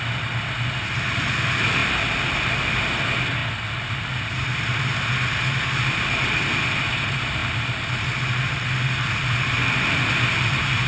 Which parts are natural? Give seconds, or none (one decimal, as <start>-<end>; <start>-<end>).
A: 0.0-1.8; 2.4-10.9